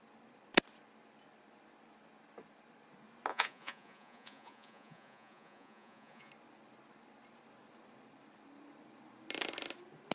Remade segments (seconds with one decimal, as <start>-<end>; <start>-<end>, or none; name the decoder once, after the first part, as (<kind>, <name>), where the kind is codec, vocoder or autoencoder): 3.3-6.3 (vocoder, Vocos)